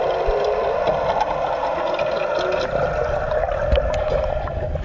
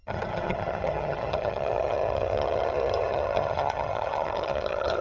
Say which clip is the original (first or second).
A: first